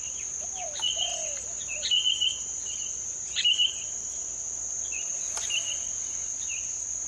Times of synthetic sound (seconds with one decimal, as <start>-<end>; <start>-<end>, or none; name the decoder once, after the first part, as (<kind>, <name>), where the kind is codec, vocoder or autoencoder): none